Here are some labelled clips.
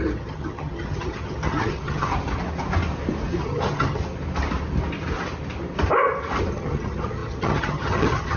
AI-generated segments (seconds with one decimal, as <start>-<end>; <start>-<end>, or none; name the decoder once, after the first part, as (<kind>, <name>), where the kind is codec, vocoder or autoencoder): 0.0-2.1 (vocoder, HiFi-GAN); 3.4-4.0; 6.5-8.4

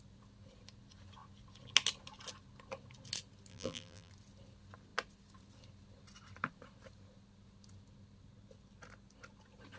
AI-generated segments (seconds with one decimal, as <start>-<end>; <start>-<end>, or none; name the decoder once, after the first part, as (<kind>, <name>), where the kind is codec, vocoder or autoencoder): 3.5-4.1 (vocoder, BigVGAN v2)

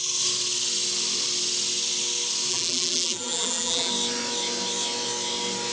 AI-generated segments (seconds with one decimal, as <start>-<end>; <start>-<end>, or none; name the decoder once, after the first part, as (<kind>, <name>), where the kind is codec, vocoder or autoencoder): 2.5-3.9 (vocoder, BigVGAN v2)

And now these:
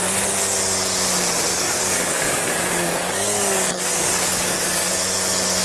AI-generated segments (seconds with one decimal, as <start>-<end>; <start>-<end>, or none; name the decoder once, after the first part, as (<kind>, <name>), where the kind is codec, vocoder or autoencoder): 1.5-4.9 (codec, DAC)

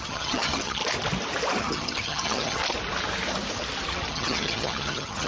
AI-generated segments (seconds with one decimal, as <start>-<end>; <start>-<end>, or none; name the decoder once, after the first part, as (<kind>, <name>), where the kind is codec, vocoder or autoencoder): 0.0-0.8 (vocoder, HiFi-GAN); 1.6-2.6; 4.1-5.3

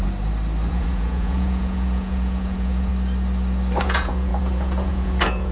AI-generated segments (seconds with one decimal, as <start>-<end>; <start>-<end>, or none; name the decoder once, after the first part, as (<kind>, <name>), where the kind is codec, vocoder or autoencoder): 0.7-2.9 (vocoder, Vocos); 3.8-5.5

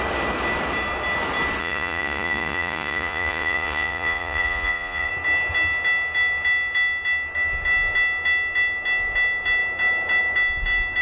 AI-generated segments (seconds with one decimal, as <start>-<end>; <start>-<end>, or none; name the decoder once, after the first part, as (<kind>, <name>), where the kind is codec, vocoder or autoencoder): 1.6-5.1 (vocoder, Vocos)